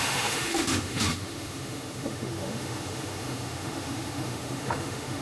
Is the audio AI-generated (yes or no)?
yes